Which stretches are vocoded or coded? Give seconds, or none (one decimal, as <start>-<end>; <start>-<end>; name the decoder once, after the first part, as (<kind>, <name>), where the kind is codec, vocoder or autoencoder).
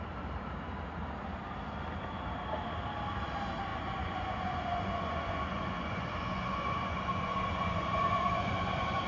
3.7-9.1 (vocoder, Vocos)